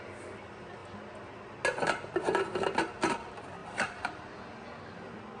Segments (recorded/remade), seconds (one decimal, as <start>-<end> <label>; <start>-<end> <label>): 0.0-3.6 recorded; 3.6-4.5 remade; 4.5-5.4 recorded

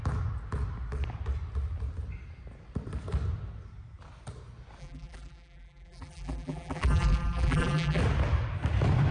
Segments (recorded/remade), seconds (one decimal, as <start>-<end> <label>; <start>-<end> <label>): 0.0-4.8 recorded; 4.8-8.0 remade; 8.0-9.1 recorded

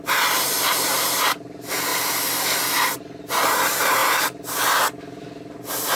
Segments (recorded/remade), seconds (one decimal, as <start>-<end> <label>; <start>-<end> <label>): 0.0-1.9 remade; 1.9-2.8 recorded; 2.8-5.9 remade

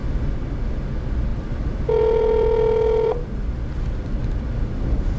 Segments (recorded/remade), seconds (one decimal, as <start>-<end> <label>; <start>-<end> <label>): 0.0-1.3 recorded; 1.3-3.7 remade; 3.7-4.2 recorded; 4.2-5.2 remade

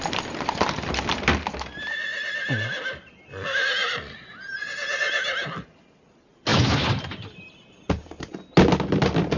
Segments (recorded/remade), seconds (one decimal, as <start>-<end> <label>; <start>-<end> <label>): 0.0-2.1 recorded; 2.1-3.1 remade; 3.1-6.5 recorded; 6.5-8.3 remade; 8.3-9.4 recorded

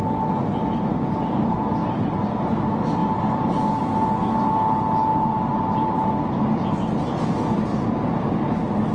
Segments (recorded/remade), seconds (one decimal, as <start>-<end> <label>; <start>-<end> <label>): 0.0-1.8 recorded; 1.8-2.5 remade; 2.5-3.0 recorded; 3.0-3.8 remade; 3.8-5.1 recorded; 5.1-6.1 remade; 6.1-8.9 recorded